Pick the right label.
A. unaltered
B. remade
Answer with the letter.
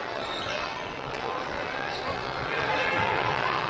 B